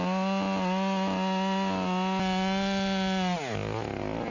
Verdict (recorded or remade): recorded